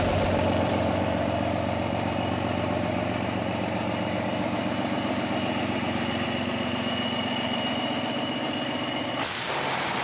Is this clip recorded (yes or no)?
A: no